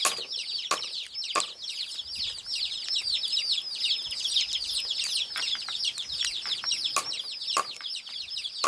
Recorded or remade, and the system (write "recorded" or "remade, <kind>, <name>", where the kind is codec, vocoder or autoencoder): recorded